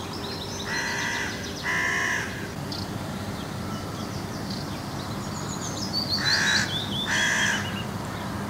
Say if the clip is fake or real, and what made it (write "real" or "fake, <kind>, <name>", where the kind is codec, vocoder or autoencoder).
real